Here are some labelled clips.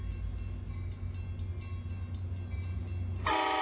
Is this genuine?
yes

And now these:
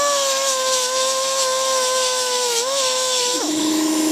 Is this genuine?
no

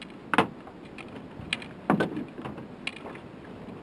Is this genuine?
yes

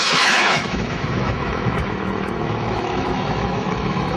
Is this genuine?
no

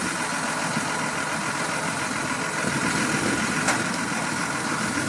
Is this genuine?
yes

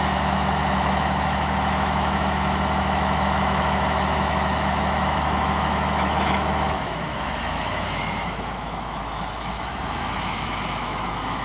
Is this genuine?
no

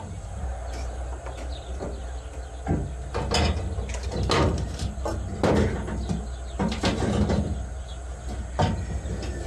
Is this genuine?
yes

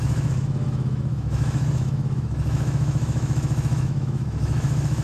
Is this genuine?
no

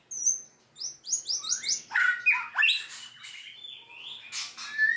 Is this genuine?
yes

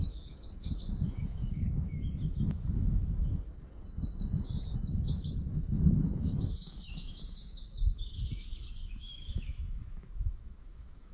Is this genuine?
no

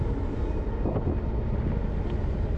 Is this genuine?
yes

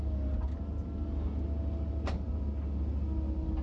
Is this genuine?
yes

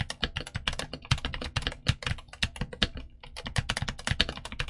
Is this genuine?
yes